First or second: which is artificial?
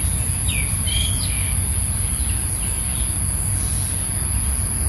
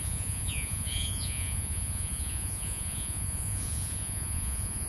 second